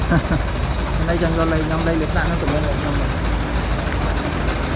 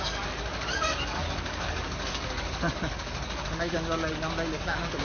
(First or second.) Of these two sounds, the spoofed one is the second